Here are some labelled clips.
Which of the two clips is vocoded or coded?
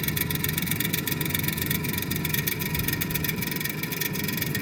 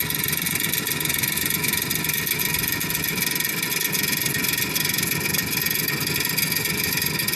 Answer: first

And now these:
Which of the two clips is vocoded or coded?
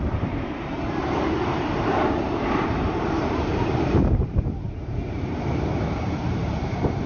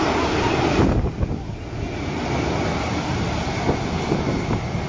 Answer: first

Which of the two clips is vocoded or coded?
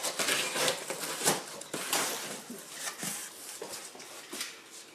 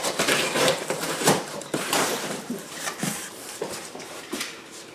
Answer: second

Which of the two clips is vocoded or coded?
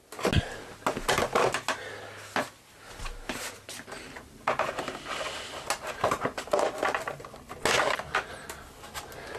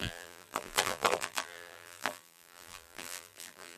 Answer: second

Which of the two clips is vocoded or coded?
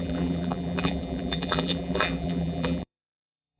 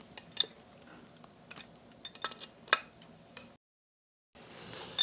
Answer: first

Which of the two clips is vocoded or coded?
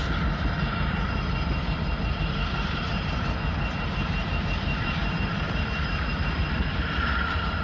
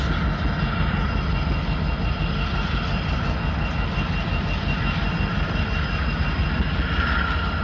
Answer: first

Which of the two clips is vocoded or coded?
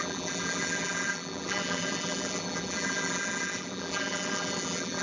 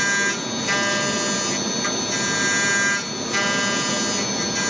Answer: first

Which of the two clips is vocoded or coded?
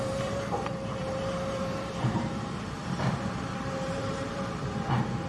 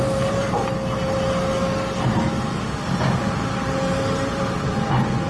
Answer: first